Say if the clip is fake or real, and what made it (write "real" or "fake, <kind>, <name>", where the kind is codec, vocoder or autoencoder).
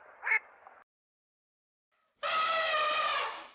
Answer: real